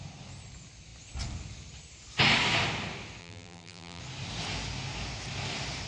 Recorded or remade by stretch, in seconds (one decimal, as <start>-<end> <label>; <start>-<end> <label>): 0.0-3.2 recorded; 3.2-4.0 remade; 4.0-5.9 recorded